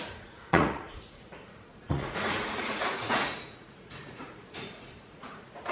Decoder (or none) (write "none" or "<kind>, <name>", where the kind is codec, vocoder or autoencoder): vocoder, Vocos